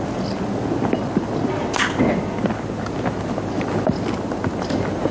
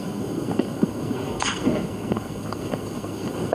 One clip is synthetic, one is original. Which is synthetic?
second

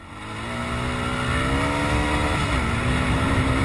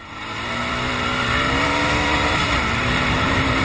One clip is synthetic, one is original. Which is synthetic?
second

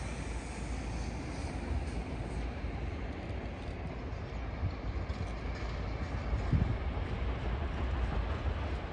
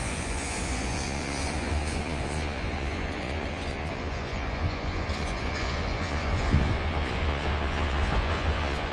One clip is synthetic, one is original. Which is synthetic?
second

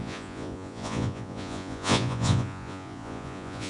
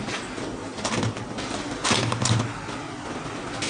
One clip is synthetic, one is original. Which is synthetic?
first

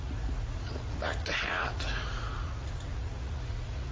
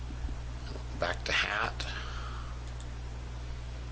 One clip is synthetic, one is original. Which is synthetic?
first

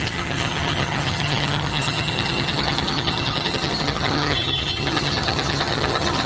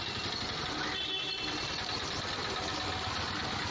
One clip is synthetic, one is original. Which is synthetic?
first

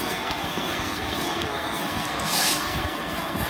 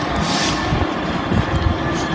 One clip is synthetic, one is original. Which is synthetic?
first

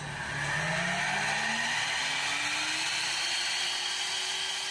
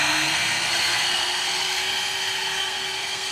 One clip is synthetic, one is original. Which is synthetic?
second